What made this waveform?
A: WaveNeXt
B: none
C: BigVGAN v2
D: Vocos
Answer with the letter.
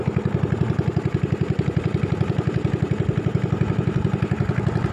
B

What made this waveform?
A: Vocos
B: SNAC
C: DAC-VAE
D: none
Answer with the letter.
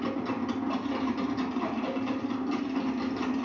D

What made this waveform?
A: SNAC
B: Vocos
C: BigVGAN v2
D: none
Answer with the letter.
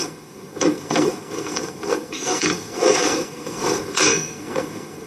A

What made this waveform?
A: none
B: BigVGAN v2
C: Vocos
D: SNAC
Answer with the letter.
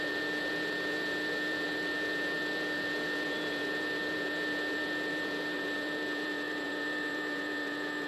C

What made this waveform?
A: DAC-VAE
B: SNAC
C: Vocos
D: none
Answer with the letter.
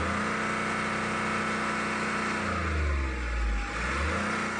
D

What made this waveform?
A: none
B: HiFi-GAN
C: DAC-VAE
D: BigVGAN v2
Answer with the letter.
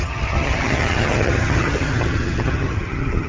B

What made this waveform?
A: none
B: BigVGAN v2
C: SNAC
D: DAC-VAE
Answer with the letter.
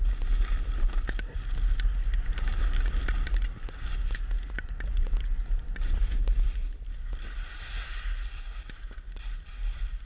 A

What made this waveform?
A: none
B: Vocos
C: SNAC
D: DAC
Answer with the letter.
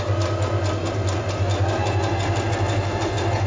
A